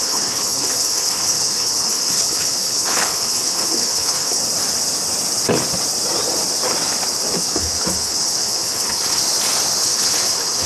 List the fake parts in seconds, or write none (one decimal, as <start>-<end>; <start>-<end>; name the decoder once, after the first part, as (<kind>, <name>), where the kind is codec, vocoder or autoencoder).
0.0-4.4 (codec, HILCodec); 7.4-9.2; 9.8-10.7